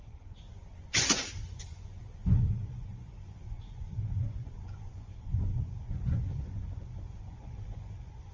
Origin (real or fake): fake